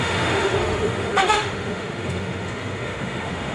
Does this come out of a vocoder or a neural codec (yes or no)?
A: yes